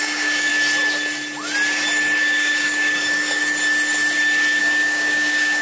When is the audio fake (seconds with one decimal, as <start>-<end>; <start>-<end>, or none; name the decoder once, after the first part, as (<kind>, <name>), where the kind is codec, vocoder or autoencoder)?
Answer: 0.0-0.5 (codec, DAC); 2.2-3.4; 4.6-5.6